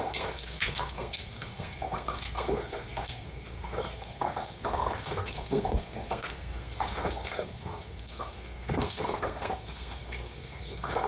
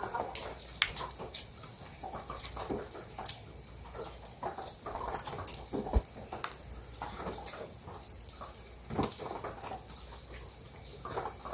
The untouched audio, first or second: second